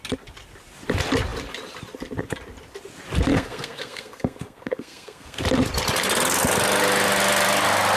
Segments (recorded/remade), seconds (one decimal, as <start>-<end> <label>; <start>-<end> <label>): 0.0-3.3 recorded; 3.3-5.4 remade; 5.4-8.0 recorded